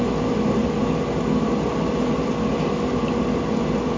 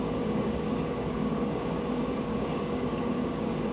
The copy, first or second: second